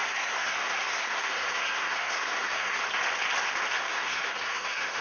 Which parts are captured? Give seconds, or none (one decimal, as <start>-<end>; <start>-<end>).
2.8-3.8